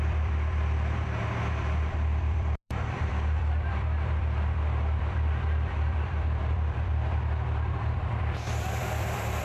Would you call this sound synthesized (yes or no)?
yes